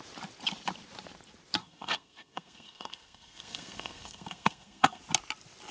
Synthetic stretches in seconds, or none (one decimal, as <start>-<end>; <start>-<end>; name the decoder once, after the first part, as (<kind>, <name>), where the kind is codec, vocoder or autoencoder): 1.6-5.0 (codec, SNAC)